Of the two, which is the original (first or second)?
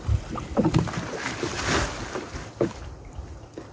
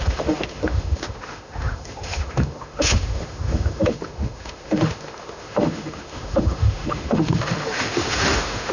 first